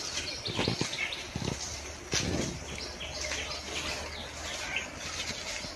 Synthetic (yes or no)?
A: no